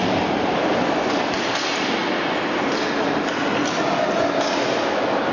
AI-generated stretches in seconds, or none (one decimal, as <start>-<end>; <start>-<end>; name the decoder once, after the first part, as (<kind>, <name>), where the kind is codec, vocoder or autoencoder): 0.0-0.7 (vocoder, BigVGAN v2)